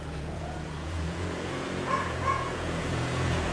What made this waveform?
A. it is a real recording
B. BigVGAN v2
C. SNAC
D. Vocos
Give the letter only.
D